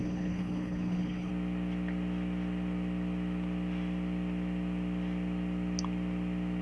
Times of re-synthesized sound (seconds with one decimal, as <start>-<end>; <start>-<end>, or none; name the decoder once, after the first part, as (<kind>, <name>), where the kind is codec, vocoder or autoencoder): 0.0-1.3 (codec, HILCodec)

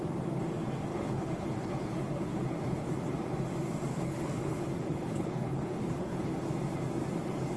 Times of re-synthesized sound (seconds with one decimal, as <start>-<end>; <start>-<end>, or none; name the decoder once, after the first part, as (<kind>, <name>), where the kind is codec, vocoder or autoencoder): 0.9-2.8 (codec, HILCodec); 3.9-6.3

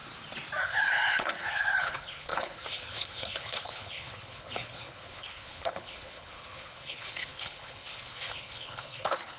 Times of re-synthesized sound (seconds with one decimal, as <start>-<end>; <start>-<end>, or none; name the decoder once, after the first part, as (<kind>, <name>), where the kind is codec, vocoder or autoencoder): 0.6-9.4 (codec, HILCodec)

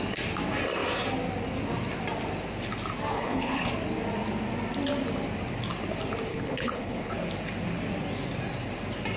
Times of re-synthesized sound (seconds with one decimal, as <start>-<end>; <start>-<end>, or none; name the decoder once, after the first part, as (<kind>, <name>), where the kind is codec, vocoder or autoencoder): 3.1-3.7 (codec, HILCodec); 6.3-7.1